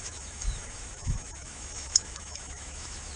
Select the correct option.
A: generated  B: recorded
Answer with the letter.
A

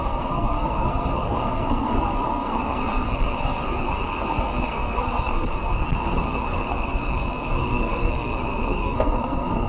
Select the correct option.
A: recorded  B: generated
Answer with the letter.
B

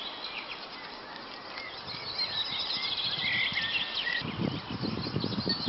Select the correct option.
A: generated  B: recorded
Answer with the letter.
B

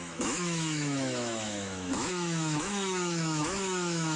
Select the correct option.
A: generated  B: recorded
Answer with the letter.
A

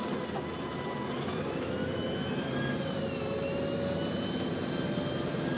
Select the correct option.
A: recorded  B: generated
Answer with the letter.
A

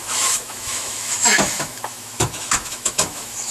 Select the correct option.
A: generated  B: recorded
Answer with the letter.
A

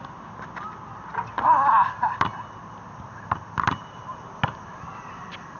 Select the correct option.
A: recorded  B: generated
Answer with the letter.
A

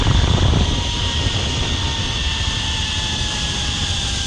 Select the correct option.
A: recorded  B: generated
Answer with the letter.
A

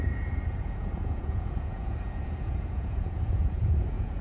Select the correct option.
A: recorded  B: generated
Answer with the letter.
B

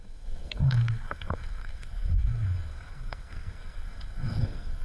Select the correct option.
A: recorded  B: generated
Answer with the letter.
B